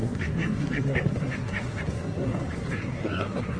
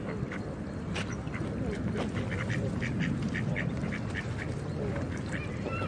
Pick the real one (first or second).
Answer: second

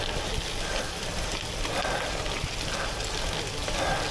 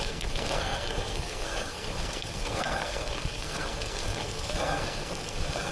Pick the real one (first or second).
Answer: first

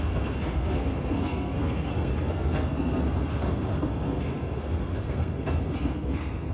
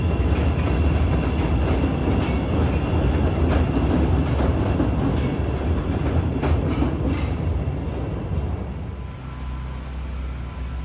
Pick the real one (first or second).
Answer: second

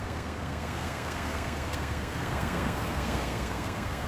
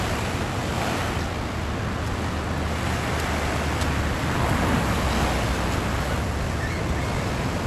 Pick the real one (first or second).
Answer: second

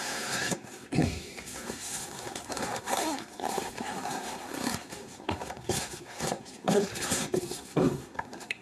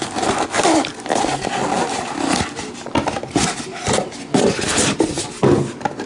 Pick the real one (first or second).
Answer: second